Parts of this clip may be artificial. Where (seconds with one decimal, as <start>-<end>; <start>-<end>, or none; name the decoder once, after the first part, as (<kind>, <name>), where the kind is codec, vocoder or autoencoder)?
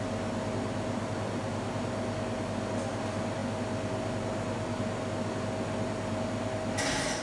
none